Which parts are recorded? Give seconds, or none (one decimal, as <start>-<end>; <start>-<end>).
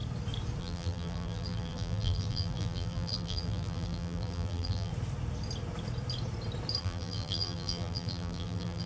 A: 0.0-0.6; 4.9-6.8